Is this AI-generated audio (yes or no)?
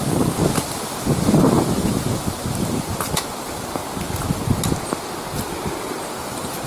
no